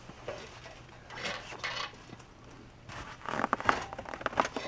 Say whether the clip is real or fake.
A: real